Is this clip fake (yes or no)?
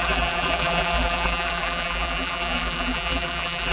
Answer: yes